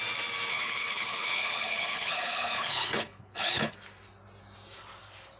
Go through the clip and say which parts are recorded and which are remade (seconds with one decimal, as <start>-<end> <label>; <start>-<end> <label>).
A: 0.0-0.5 recorded; 0.5-3.7 remade; 3.7-5.4 recorded